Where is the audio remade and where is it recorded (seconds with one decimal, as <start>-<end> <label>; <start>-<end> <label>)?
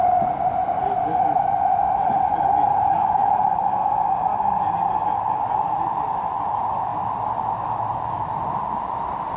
0.0-6.9 remade; 6.9-8.0 recorded; 8.0-9.4 remade